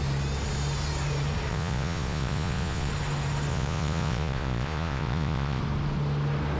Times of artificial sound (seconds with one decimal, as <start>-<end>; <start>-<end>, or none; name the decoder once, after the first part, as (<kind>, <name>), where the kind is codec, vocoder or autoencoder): 1.5-2.9 (vocoder, Vocos); 3.5-5.6